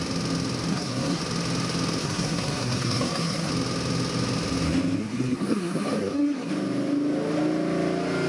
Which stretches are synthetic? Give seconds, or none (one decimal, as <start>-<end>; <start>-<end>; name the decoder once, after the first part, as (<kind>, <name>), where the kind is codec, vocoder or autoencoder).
0.7-1.2 (codec, SNAC); 2.0-3.5; 5.0-6.5